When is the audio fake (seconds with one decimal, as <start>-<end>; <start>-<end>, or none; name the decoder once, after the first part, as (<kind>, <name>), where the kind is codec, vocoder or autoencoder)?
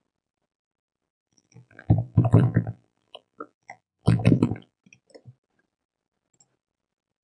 1.1-4.8 (vocoder, BigVGAN v2)